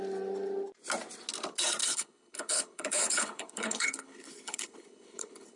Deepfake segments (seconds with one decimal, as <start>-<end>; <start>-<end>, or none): 1.8-5.6